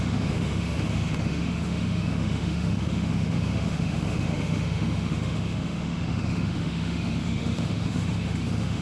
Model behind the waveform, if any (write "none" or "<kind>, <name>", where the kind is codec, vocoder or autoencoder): autoencoder, DAC-VAE